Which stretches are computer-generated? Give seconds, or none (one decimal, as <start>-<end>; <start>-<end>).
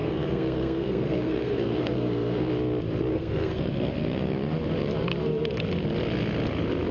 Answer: 0.0-2.5; 3.1-3.7